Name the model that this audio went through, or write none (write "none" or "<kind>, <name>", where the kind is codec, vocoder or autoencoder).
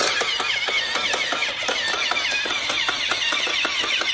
none